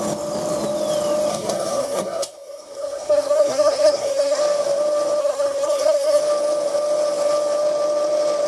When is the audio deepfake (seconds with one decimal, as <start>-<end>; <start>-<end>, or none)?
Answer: 1.3-4.4; 5.2-6.2